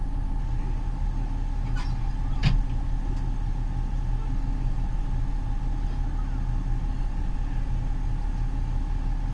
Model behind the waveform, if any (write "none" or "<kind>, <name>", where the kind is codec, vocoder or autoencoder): none